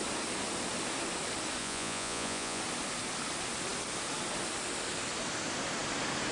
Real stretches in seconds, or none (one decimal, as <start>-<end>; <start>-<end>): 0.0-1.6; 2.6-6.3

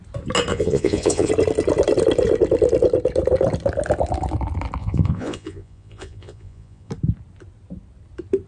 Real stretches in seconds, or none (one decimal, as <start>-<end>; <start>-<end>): 0.0-0.5; 1.3-4.8; 6.9-8.5

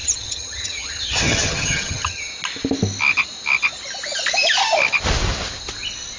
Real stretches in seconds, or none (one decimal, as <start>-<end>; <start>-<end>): 2.3-6.2

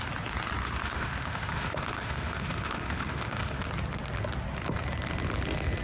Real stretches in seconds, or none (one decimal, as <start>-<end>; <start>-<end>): 0.0-0.6; 3.6-5.8

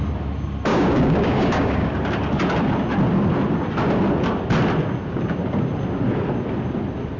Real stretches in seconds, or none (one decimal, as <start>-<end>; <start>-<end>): 0.0-0.7; 1.9-7.2

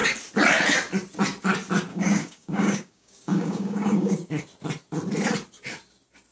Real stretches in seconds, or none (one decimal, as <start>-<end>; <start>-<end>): 0.0-1.9; 4.3-6.3

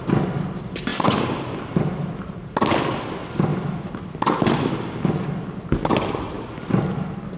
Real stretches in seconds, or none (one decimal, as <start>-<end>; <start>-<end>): 0.0-7.4